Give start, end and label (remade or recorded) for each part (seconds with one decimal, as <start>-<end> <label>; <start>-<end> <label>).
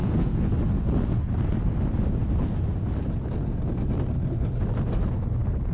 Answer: 0.0-0.5 remade; 0.5-5.7 recorded